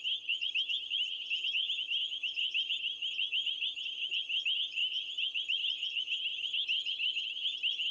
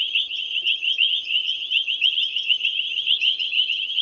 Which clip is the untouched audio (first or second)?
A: first